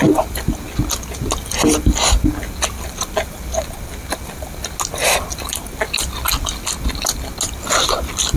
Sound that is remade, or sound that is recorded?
recorded